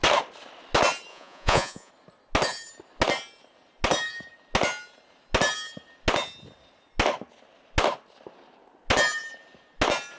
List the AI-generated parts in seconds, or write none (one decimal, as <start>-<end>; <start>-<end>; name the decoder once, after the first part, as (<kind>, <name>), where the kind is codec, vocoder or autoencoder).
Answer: 1.1-1.9 (vocoder, Vocos)